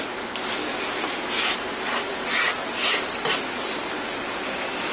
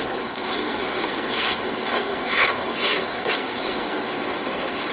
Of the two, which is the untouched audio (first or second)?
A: first